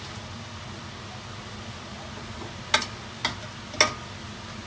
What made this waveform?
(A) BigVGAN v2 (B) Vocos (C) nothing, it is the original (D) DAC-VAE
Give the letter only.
C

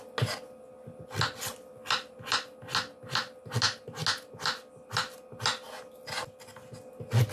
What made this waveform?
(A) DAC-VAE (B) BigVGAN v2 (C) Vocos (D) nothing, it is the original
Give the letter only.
D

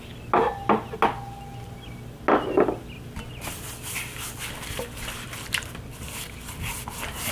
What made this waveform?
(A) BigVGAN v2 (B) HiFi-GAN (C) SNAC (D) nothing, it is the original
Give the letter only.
D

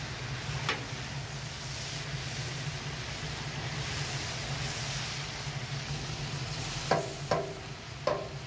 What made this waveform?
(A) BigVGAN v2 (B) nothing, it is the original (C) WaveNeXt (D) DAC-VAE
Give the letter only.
B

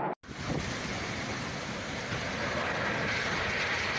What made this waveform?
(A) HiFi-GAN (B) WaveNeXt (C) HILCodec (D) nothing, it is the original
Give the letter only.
D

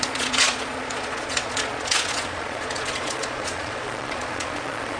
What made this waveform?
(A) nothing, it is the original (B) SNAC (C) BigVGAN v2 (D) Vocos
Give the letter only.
D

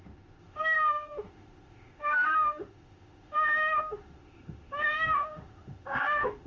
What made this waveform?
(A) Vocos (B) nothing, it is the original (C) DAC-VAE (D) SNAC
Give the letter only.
C